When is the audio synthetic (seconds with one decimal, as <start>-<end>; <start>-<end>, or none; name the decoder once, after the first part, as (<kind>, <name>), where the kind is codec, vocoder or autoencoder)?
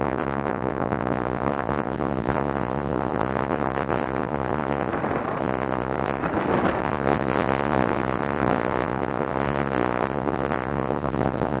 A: 0.0-4.9 (vocoder, Vocos); 5.4-6.2; 6.8-11.6